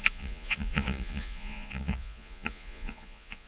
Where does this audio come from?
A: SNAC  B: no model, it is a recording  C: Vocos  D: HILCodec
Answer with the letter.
C